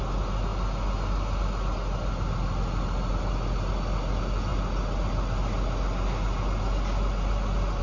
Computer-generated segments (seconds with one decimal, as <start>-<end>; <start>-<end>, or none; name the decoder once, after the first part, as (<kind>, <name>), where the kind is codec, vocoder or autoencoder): none